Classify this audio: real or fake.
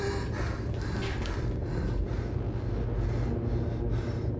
real